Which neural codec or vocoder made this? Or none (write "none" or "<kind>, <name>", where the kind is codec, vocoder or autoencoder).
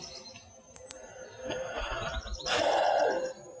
vocoder, BigVGAN v2